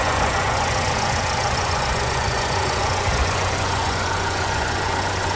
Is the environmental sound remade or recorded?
remade